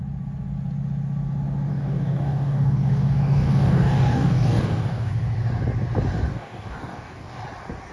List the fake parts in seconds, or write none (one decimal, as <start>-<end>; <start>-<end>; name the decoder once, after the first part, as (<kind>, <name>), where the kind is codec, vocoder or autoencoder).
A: 1.7-5.1 (codec, DAC); 6.3-7.4